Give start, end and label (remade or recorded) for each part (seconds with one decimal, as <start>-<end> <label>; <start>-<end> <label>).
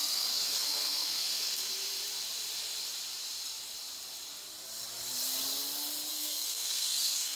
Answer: 0.0-1.7 remade; 1.7-6.1 recorded; 6.1-7.4 remade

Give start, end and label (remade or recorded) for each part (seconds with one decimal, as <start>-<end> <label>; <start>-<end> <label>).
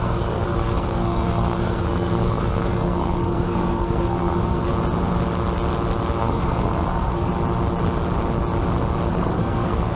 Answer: 0.0-4.7 remade; 4.7-6.2 recorded; 6.2-7.3 remade; 7.3-9.1 recorded; 9.1-10.0 remade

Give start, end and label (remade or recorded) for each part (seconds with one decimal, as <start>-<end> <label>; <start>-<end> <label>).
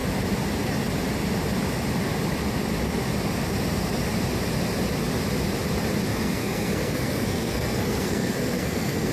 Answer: 0.0-6.1 recorded; 6.1-9.1 remade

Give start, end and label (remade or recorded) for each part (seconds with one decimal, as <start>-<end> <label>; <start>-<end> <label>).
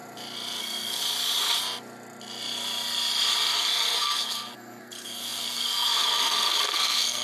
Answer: 0.0-0.6 recorded; 0.6-1.0 remade; 1.0-3.5 recorded; 3.5-7.2 remade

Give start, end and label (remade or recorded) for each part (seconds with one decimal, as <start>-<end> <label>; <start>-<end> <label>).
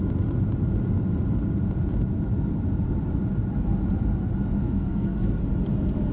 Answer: 0.0-4.6 recorded; 4.6-5.5 remade; 5.5-6.1 recorded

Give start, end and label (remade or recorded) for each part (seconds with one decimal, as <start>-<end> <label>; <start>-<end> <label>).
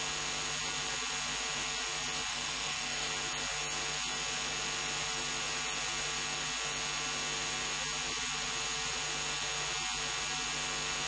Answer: 0.0-2.3 recorded; 2.3-3.1 remade; 3.1-11.1 recorded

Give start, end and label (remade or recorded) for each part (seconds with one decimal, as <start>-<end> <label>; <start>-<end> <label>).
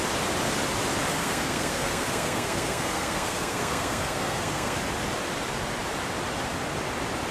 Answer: 0.0-1.1 recorded; 1.1-4.8 remade; 4.8-7.3 recorded